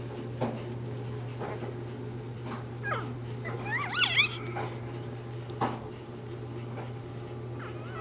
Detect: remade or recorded recorded